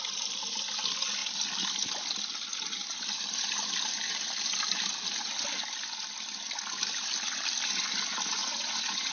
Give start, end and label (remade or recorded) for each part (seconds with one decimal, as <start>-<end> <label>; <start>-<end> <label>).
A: 0.0-8.4 recorded; 8.4-9.1 remade